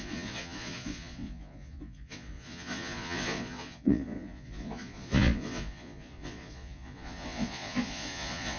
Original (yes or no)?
no